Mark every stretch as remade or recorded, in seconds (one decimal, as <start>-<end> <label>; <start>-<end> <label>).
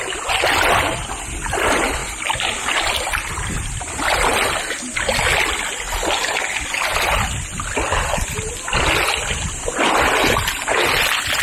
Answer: 0.0-11.4 recorded